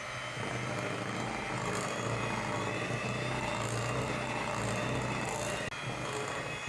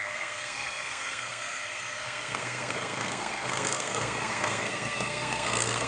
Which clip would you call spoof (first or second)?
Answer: second